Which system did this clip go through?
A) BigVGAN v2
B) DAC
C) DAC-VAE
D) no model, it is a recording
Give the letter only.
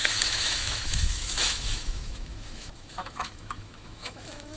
C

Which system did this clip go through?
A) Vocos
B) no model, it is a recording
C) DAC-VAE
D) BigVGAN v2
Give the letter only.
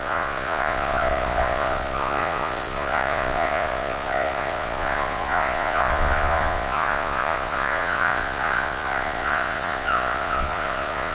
A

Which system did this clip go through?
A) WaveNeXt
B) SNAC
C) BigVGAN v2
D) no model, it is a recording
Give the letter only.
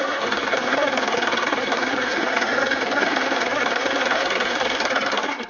B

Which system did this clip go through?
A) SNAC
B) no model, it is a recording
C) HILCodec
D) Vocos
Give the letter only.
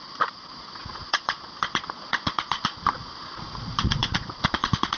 D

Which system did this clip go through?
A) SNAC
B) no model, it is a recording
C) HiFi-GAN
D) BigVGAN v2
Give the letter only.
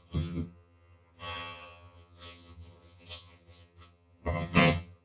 C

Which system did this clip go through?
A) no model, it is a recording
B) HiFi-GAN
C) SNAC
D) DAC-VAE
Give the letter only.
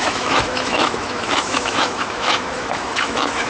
D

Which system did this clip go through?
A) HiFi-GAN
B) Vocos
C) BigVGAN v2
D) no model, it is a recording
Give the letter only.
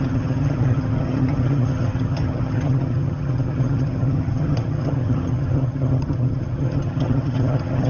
A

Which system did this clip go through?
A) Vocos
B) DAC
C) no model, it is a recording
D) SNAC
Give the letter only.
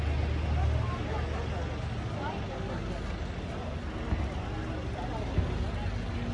C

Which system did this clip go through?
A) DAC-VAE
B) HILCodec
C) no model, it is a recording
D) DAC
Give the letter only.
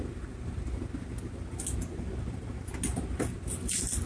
C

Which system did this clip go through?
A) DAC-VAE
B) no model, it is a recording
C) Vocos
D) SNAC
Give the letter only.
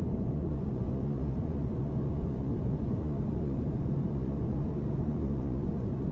C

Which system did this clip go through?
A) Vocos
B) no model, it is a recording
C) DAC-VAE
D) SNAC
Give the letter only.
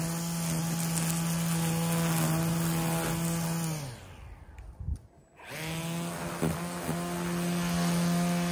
B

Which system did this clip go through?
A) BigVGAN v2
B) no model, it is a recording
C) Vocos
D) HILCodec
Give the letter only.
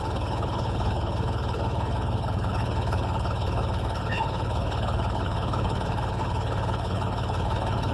D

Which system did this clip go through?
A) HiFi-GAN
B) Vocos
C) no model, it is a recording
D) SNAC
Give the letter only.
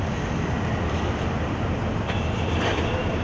C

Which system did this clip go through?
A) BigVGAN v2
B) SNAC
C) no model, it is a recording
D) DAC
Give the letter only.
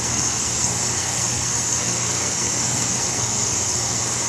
B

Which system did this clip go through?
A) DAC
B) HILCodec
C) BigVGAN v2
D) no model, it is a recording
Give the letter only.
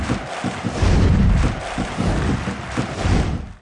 D